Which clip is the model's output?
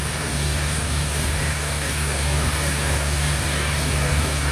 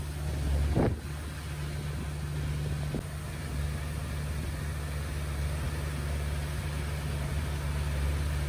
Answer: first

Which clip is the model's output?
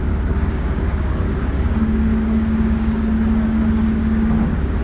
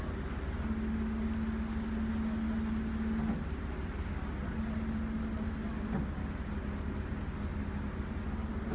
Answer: first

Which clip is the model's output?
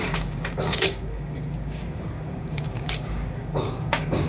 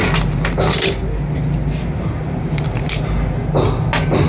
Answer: first